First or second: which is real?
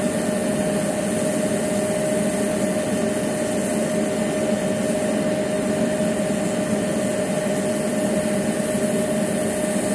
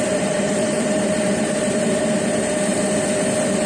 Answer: first